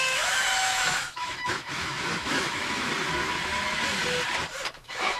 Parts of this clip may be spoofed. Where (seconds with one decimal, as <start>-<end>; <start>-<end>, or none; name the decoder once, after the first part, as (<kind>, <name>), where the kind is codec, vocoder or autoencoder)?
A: 0.0-2.9 (autoencoder, DAC-VAE); 4.7-5.2